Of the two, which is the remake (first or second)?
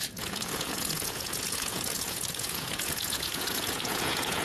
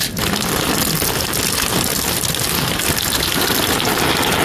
first